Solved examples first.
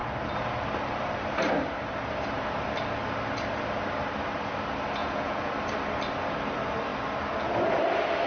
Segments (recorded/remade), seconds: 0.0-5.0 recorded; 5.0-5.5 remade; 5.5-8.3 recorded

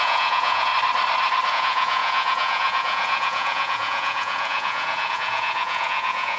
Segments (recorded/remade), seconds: 0.0-0.7 remade; 0.7-1.5 recorded; 1.5-6.4 remade

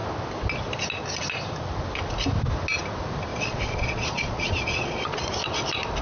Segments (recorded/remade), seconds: 0.0-3.3 recorded; 3.3-5.3 remade; 5.3-6.0 recorded